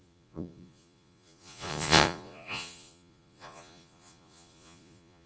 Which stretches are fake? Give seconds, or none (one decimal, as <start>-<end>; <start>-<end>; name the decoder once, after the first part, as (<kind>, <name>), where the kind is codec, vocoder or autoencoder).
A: 0.0-5.3 (vocoder, Vocos)